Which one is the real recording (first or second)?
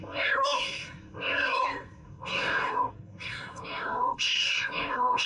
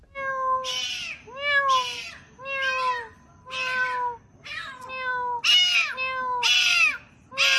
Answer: second